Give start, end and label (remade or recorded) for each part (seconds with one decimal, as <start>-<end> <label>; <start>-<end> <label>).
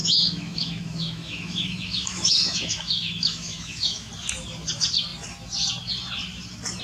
0.0-4.1 remade; 4.1-6.8 recorded